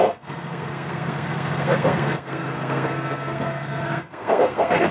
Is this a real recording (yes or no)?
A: no